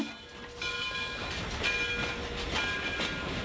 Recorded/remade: recorded